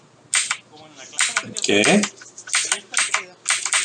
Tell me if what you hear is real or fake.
real